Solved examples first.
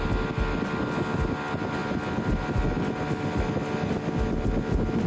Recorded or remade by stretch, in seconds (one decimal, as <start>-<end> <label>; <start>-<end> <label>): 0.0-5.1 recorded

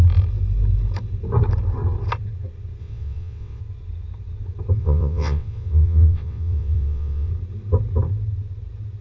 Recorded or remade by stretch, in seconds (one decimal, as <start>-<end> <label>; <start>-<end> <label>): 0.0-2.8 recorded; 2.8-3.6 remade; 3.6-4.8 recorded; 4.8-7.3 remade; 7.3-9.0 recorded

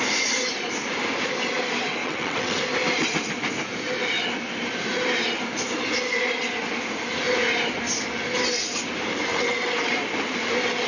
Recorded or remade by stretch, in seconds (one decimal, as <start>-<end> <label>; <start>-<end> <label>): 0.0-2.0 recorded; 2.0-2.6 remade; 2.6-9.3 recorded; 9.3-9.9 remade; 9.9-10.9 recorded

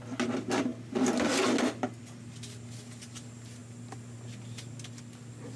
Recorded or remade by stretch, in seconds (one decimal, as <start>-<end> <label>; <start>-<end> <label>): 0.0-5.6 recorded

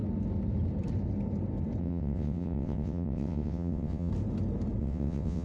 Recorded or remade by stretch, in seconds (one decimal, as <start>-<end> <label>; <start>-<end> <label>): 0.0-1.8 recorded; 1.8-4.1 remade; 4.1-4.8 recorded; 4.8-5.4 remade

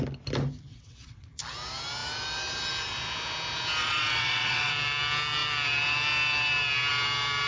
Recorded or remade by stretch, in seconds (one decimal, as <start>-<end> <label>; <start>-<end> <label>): 0.0-0.7 recorded; 0.7-1.4 remade; 1.4-3.8 recorded; 3.8-4.7 remade; 4.7-7.5 recorded